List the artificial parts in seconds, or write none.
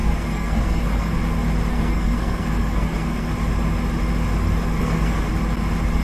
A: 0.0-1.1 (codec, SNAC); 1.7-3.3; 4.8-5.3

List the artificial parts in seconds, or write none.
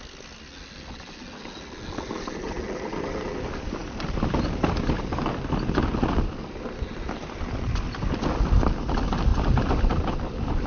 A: none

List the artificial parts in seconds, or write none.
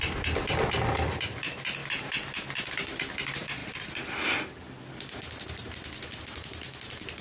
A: none